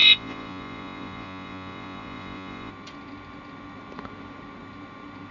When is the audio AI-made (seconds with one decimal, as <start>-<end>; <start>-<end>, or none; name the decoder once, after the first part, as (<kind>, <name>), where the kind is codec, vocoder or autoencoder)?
0.0-2.7 (vocoder, Vocos)